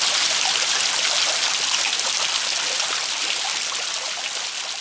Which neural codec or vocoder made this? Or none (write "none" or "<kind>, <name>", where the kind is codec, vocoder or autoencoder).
none